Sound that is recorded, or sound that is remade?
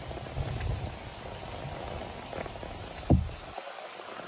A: recorded